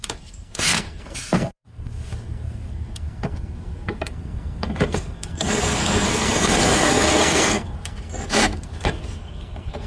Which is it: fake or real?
fake